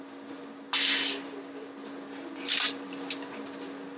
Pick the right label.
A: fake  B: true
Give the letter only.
B